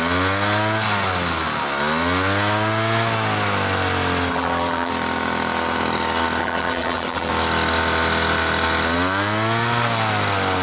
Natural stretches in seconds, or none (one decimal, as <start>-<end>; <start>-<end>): 0.0-4.3; 4.9-6.4; 7.3-10.6